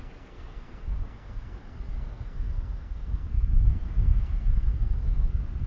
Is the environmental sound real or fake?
fake